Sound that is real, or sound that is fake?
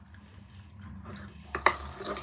real